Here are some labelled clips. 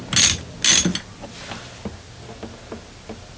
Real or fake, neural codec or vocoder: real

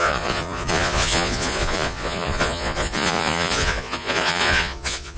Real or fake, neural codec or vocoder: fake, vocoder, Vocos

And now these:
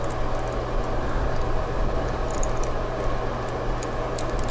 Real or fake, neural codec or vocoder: real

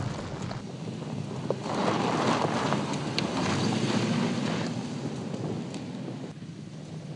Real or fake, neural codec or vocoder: real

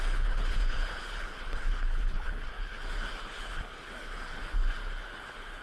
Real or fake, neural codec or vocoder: fake, codec, HILCodec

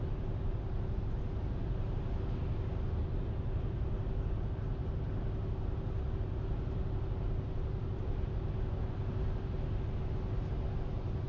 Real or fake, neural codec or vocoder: real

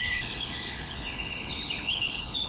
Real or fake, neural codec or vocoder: fake, codec, HILCodec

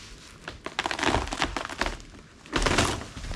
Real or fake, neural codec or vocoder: real